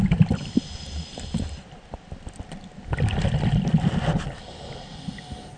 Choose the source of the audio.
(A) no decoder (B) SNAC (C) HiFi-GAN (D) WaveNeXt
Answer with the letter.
A